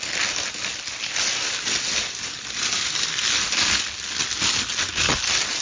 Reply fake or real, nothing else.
real